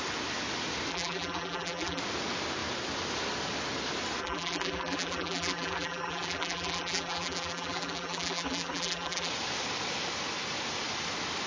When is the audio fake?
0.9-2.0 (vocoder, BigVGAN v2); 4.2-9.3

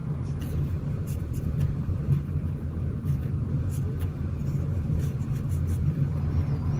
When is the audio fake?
0.0-3.2 (vocoder, BigVGAN v2)

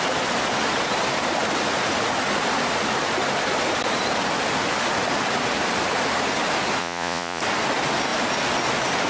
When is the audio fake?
6.8-7.4 (vocoder, Vocos)

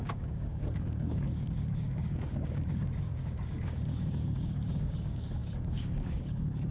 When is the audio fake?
0.0-6.7 (codec, DAC)

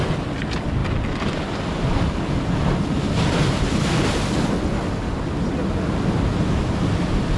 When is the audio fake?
none

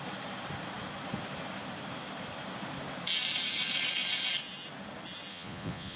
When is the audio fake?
5.3-6.0 (vocoder, Vocos)

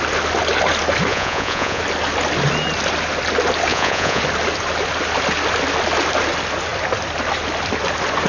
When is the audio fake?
1.1-1.8 (vocoder, Vocos); 3.7-4.2